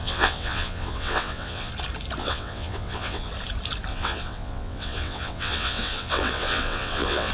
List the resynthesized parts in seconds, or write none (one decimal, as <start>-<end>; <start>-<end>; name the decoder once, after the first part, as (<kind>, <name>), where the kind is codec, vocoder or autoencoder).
0.0-1.7 (vocoder, WaveNeXt); 2.2-3.3; 3.9-7.3

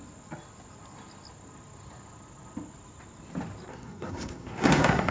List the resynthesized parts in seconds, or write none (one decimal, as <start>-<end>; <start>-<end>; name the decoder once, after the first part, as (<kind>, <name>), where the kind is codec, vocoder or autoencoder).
3.7-5.1 (codec, SNAC)

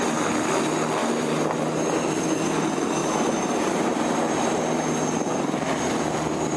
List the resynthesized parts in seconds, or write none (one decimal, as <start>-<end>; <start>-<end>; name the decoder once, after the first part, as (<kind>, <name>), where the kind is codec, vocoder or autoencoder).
1.0-2.1 (vocoder, BigVGAN v2); 3.0-6.6

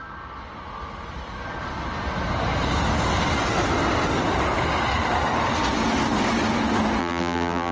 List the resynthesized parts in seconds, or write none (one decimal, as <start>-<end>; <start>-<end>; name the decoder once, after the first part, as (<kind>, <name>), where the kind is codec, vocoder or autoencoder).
7.0-7.7 (vocoder, BigVGAN v2)

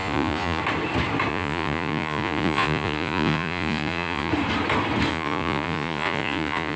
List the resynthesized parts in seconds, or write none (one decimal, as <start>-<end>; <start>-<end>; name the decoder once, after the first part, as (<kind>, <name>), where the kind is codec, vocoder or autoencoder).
0.0-0.6 (vocoder, Vocos); 1.3-4.3; 5.1-6.8

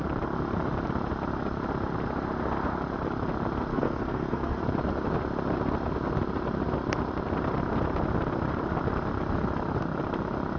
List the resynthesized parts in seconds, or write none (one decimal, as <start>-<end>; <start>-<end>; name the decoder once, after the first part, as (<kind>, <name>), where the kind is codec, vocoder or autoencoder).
3.7-4.6 (codec, SNAC)